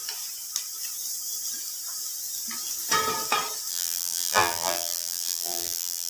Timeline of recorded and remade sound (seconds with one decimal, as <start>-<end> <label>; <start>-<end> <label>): 0.0-3.7 recorded; 3.7-6.1 remade